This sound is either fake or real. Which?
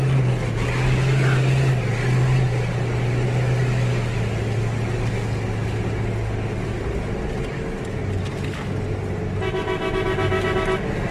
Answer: real